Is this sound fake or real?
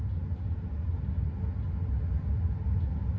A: real